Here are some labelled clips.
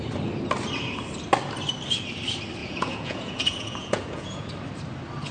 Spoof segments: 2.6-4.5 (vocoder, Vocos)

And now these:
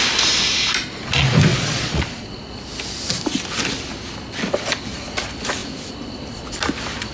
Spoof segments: 1.5-2.4 (vocoder, Vocos)

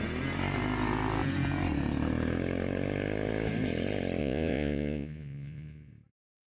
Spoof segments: 4.2-5.9 (vocoder, Vocos)

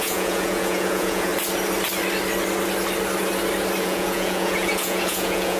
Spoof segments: 0.0-1.3 (vocoder, Vocos); 3.8-5.6

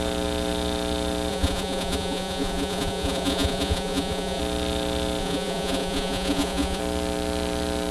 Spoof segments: 1.3-4.4 (vocoder, Vocos); 5.2-6.8

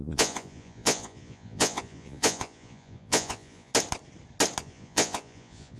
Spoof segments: 0.0-3.7 (vocoder, Vocos); 4.6-5.8